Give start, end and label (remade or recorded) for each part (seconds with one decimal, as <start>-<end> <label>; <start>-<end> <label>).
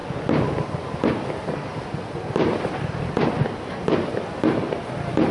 0.0-5.3 recorded